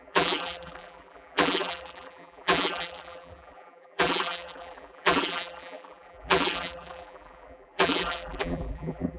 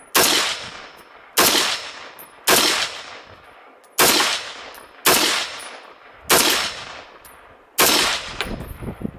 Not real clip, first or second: first